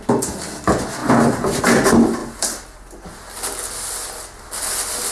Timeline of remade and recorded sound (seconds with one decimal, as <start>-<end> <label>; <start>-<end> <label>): 0.0-5.1 recorded